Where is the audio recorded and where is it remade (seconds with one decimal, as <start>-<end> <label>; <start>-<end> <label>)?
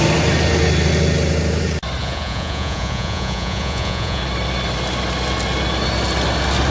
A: 0.0-2.0 recorded; 2.0-4.2 remade; 4.2-6.7 recorded